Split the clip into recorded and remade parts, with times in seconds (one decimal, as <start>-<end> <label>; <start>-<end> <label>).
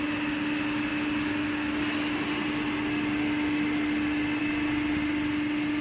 0.0-5.8 recorded